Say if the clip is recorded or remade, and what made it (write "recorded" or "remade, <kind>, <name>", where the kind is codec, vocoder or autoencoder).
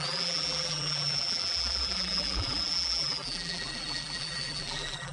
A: remade, vocoder, BigVGAN v2